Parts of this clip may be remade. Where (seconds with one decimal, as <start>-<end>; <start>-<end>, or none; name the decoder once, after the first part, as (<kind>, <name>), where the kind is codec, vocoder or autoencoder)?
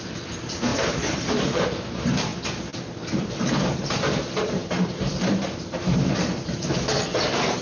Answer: 0.0-2.3 (vocoder, BigVGAN v2); 3.2-7.6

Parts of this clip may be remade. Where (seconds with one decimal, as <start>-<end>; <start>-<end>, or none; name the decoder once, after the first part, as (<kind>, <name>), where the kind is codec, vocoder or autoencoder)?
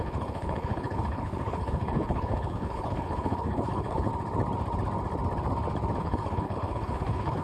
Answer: 0.0-4.1 (codec, HILCodec); 6.0-7.4